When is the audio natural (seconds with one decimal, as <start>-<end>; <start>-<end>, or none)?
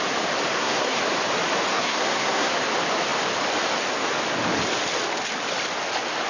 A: 0.0-0.5; 1.0-1.7; 2.5-6.3